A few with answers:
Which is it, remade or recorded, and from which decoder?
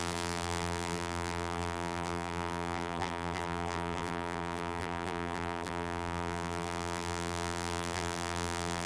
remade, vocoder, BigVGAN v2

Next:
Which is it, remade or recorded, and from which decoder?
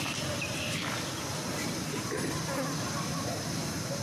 remade, vocoder, BigVGAN v2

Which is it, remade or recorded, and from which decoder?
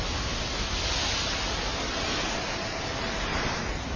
recorded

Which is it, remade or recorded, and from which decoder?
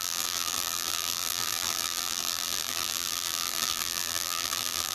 remade, vocoder, BigVGAN v2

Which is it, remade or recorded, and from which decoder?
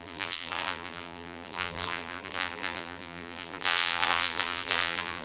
remade, vocoder, BigVGAN v2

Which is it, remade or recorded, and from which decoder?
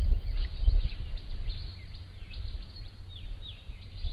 remade, vocoder, BigVGAN v2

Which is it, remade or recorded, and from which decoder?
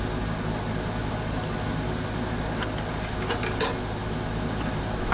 recorded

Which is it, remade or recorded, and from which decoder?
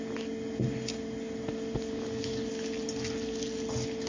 recorded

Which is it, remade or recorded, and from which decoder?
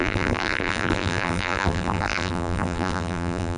remade, vocoder, BigVGAN v2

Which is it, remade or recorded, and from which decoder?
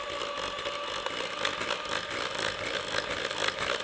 recorded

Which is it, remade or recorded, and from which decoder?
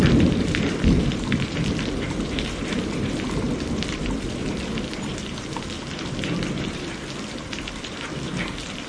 remade, vocoder, BigVGAN v2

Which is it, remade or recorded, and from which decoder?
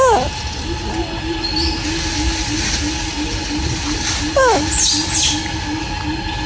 recorded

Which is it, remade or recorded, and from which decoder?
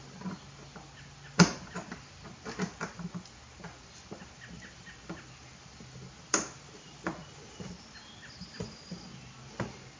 remade, vocoder, BigVGAN v2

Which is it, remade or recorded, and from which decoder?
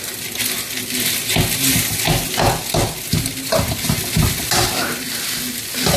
recorded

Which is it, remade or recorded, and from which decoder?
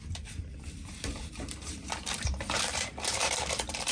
remade, vocoder, BigVGAN v2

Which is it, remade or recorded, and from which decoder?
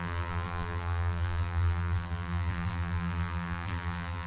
remade, vocoder, BigVGAN v2